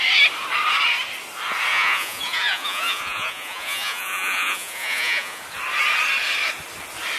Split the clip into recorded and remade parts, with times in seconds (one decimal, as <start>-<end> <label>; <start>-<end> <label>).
0.0-1.7 recorded; 1.7-5.4 remade; 5.4-7.2 recorded

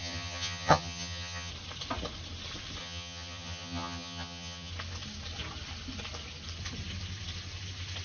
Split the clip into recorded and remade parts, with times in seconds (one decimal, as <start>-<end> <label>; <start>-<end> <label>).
0.0-1.5 remade; 1.5-2.8 recorded; 2.8-4.7 remade; 4.7-8.0 recorded

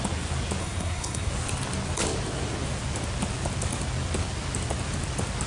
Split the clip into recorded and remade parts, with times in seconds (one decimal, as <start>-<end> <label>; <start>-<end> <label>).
0.0-0.6 recorded; 0.6-1.3 remade; 1.3-5.5 recorded

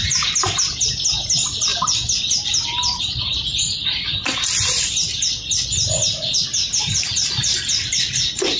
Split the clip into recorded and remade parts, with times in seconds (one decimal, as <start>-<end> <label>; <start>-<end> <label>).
0.0-8.6 recorded

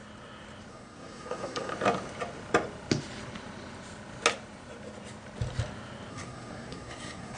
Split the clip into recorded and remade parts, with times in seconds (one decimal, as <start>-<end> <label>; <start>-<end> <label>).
0.0-0.7 recorded; 0.7-1.7 remade; 1.7-6.1 recorded; 6.1-7.4 remade